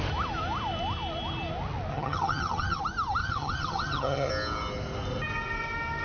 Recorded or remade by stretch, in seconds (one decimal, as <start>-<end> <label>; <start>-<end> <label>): 0.0-1.9 recorded; 1.9-2.8 remade; 2.8-3.2 recorded; 3.2-4.3 remade; 4.3-6.0 recorded